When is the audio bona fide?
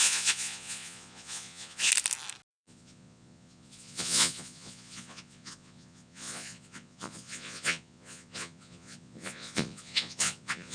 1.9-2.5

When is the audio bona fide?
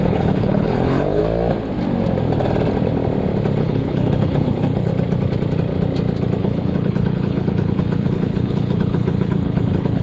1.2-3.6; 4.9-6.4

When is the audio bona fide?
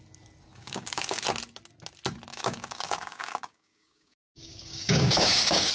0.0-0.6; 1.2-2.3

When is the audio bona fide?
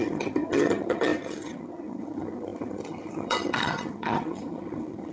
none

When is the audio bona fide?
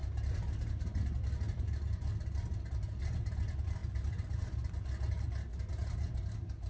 0.0-6.7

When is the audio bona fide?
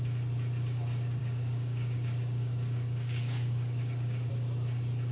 0.0-1.2; 4.3-5.1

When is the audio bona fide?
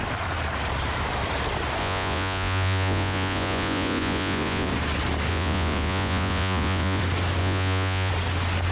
0.0-1.8; 4.7-5.3; 7.0-7.4; 8.1-8.7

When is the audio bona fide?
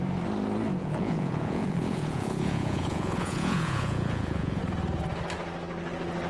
0.0-0.8; 4.6-6.3